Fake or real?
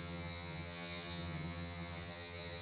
fake